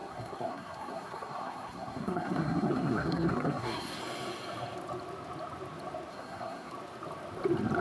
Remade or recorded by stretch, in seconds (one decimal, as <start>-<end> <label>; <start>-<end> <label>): 0.0-4.0 remade; 4.0-6.1 recorded; 6.1-6.7 remade; 6.7-7.8 recorded